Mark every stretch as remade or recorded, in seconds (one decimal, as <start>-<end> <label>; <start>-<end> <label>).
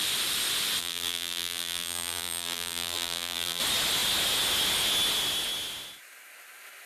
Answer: 0.0-0.8 recorded; 0.8-3.6 remade; 3.6-6.9 recorded